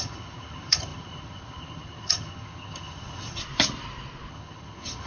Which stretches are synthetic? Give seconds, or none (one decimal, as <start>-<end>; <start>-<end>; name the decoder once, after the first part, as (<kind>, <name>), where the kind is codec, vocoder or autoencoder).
0.0-3.4 (vocoder, HiFi-GAN); 4.3-5.1